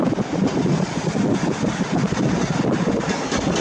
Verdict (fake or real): real